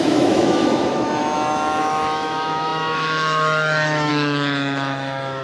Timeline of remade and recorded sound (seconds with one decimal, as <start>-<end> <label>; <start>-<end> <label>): 0.0-1.2 remade; 1.2-1.8 recorded; 1.8-5.4 remade